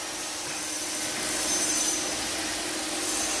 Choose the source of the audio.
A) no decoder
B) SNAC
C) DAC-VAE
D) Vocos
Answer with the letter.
A